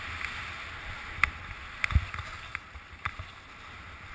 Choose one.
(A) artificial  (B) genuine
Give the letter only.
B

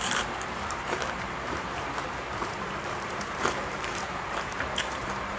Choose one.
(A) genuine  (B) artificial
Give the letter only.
B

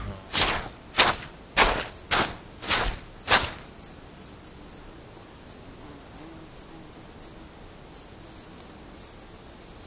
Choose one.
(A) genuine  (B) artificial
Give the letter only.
A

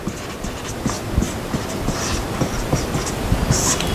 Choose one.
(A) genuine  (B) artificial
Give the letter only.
B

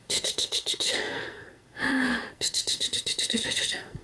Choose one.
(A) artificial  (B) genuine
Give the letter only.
A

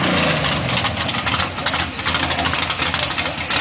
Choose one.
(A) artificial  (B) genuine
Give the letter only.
B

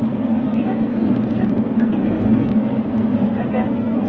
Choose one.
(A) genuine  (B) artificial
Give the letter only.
B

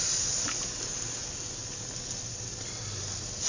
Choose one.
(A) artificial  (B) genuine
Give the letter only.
B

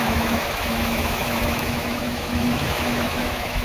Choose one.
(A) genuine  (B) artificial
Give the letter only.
B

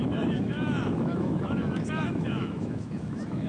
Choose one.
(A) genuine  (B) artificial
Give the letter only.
B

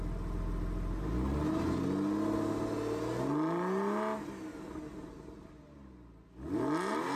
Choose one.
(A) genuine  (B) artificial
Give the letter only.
A